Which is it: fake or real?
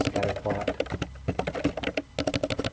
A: real